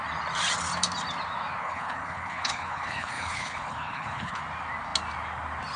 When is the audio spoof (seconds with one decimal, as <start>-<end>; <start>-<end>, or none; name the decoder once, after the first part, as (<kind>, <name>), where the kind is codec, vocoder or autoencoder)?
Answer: 1.6-4.4 (codec, HILCodec)